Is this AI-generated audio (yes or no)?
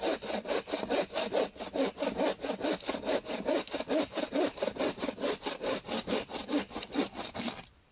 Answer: no